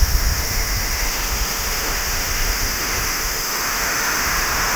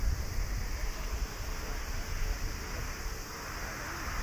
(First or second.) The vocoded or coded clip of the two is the first